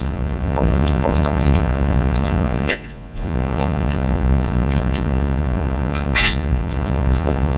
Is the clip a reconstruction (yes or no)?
yes